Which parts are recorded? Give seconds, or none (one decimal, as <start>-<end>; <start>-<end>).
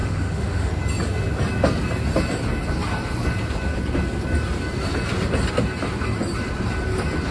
0.7-7.3